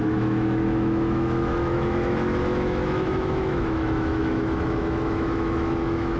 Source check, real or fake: fake